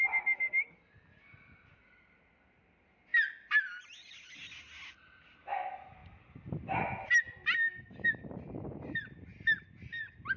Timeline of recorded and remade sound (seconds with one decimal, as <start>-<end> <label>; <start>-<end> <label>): 0.0-10.4 recorded